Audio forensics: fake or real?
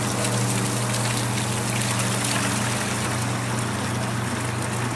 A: real